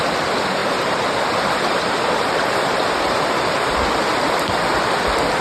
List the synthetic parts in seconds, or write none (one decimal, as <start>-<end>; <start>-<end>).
0.6-3.8